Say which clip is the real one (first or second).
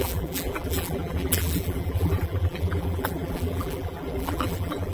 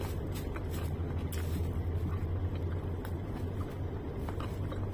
second